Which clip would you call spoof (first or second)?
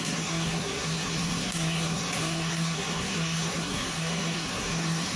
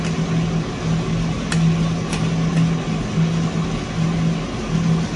first